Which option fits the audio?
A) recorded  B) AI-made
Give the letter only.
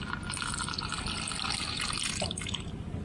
A